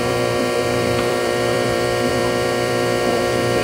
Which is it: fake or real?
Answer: fake